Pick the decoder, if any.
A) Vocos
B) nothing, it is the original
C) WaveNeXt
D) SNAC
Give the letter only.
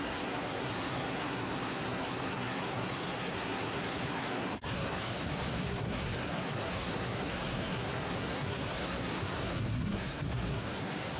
D